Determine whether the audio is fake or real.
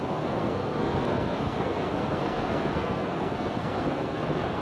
fake